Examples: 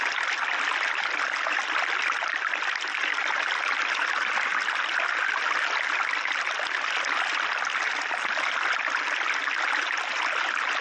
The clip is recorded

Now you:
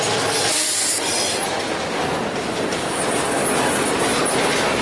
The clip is recorded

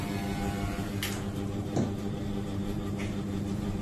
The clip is remade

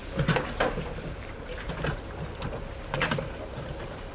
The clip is recorded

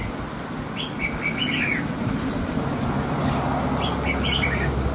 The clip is recorded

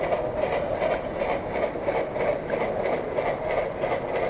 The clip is recorded